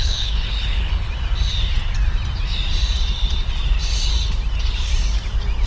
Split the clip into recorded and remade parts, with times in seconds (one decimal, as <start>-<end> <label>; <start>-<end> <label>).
0.0-1.1 remade; 1.1-5.7 recorded